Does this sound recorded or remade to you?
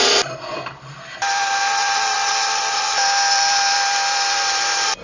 remade